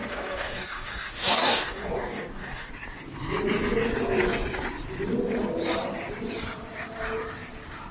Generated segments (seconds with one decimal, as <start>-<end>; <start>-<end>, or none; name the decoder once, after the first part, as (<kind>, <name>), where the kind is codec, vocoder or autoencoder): 0.0-2.7 (codec, DAC)